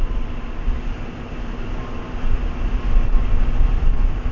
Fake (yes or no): no